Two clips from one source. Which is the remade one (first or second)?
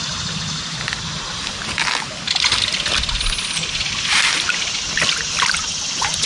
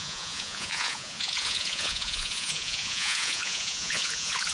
second